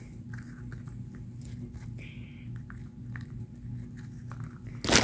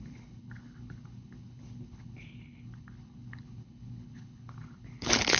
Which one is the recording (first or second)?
first